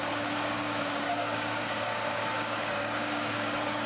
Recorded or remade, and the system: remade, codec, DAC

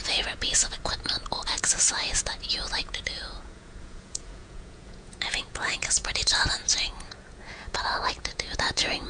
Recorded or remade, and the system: remade, vocoder, Vocos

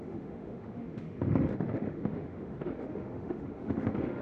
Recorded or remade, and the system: remade, autoencoder, DAC-VAE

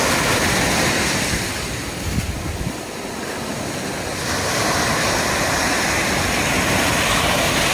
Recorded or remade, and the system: recorded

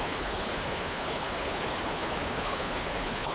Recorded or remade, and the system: remade, codec, HILCodec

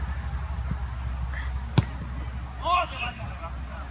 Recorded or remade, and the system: recorded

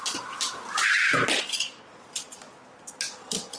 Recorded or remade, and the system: recorded